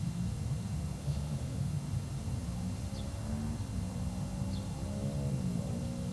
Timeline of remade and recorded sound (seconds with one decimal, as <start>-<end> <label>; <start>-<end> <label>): 0.0-1.0 recorded; 1.0-1.7 remade; 1.7-6.1 recorded